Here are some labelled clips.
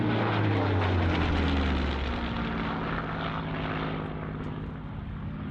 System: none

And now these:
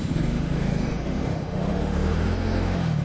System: autoencoder, DAC-VAE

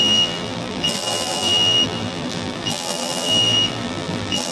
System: vocoder, BigVGAN v2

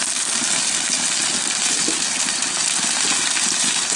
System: none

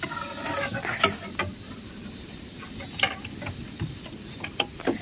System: none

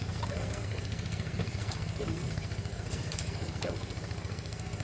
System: codec, SNAC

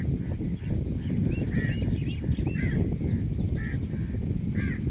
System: none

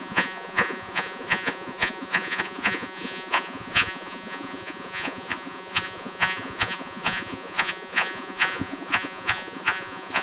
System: vocoder, Vocos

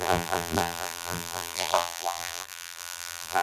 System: vocoder, BigVGAN v2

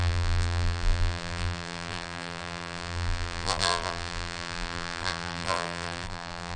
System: vocoder, BigVGAN v2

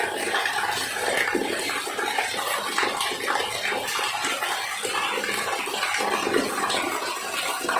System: none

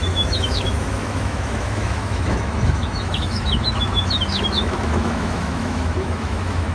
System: autoencoder, DAC-VAE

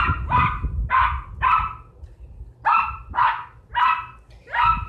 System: none